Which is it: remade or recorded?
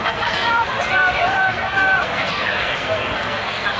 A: remade